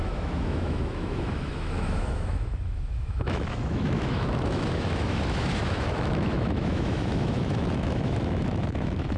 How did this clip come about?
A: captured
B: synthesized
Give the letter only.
B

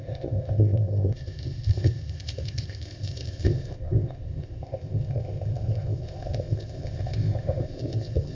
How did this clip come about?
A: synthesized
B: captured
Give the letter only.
A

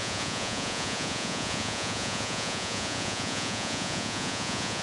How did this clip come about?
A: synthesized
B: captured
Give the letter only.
A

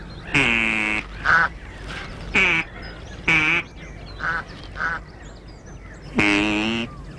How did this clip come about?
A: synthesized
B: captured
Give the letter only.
B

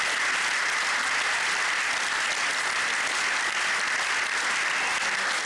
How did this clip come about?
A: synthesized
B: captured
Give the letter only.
B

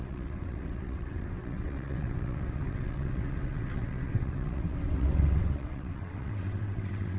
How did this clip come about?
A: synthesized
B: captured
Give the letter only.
A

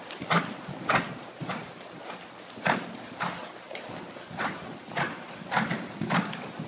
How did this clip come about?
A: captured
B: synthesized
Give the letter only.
A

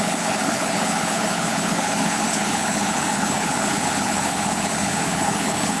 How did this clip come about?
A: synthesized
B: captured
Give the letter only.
A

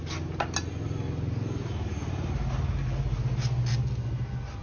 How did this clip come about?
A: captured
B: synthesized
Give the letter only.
A